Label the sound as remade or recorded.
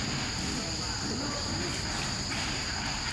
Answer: recorded